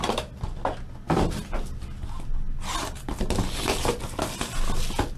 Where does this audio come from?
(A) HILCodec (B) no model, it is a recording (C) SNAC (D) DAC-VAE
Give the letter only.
B